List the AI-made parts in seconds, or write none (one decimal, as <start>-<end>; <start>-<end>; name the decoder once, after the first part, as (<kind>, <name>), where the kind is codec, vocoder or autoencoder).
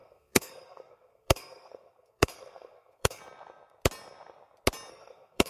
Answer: 0.0-3.2 (codec, SNAC); 4.9-5.5